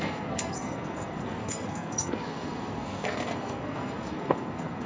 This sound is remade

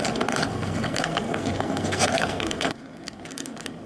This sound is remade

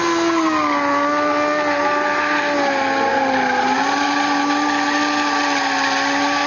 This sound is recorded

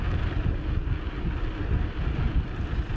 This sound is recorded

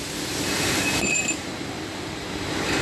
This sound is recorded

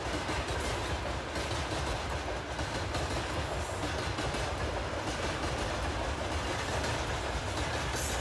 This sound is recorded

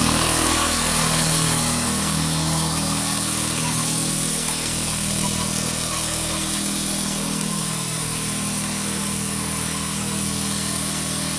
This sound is remade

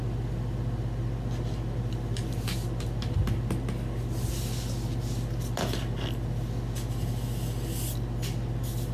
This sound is recorded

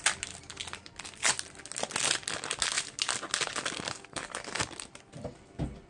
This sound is recorded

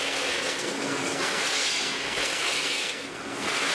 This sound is remade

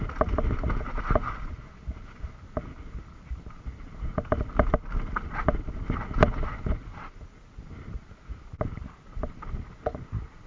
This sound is recorded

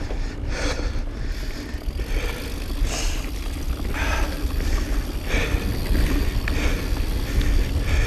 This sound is recorded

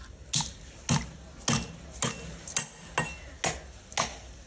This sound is recorded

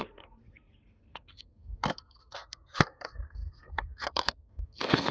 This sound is remade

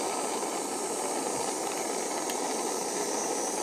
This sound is recorded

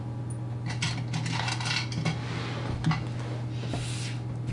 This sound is recorded